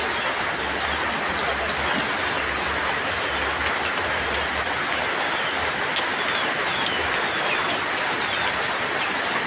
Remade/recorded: recorded